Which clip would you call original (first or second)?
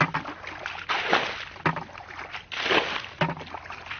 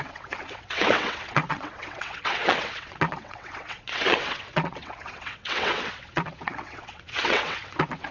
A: first